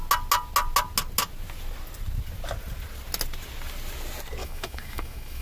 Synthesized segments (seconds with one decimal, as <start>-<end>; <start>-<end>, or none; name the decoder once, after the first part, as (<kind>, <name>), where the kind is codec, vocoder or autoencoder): 4.4-5.4 (autoencoder, DAC-VAE)